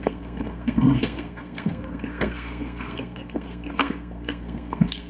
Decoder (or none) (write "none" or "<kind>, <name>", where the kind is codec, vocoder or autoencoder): codec, SNAC